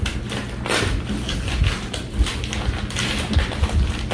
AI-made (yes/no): no